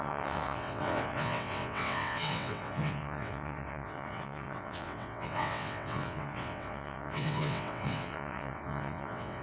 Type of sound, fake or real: fake